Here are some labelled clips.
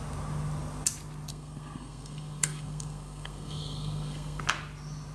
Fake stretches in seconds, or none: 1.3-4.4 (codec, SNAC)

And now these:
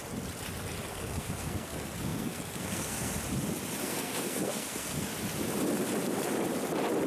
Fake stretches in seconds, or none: 0.9-3.1 (codec, SNAC); 3.8-5.1

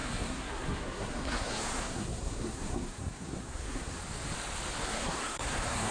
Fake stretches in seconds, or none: 0.0-4.0 (codec, SNAC); 4.8-5.9